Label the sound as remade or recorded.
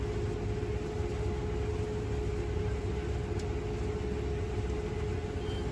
recorded